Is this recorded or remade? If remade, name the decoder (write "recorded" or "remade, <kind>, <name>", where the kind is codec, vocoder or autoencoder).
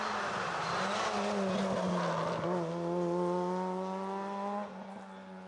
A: recorded